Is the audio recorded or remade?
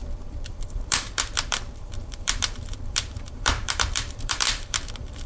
remade